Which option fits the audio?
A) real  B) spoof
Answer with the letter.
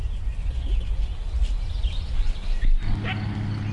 A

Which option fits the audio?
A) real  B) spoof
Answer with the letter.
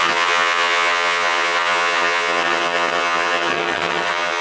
B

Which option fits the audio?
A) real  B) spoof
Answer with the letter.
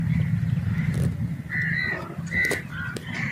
A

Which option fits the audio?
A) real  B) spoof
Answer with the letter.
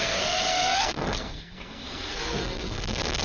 B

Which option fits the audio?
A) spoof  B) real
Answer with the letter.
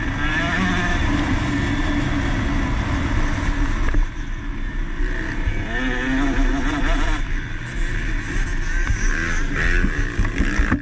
B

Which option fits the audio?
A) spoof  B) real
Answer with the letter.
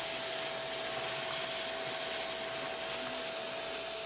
B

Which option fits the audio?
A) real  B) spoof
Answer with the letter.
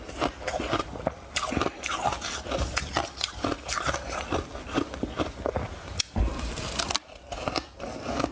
B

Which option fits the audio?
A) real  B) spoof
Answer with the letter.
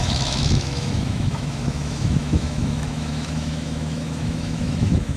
B